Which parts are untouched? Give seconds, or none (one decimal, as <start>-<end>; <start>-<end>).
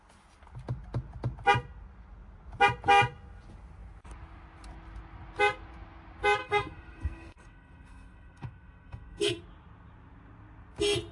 0.0-6.4; 9.4-11.1